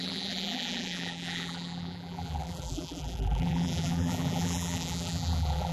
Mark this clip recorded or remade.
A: remade